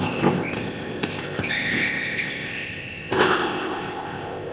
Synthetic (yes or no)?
yes